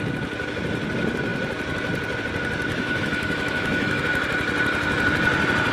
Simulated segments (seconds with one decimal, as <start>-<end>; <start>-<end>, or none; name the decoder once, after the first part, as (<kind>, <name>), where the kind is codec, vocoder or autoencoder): 2.7-4.0 (autoencoder, DAC-VAE)